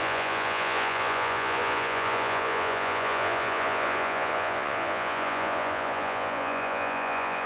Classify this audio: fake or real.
fake